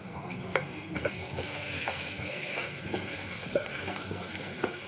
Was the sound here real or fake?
fake